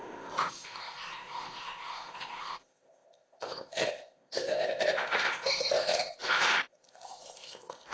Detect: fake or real fake